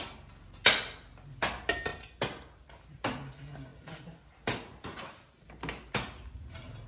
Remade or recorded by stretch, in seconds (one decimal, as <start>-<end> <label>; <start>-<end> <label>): 0.0-3.7 recorded; 3.7-5.3 remade; 5.3-6.9 recorded